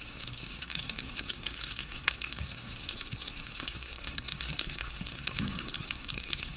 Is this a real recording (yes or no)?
no